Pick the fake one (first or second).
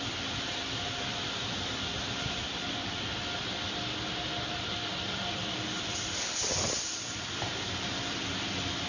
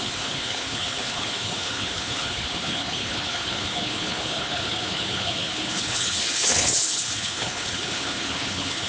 second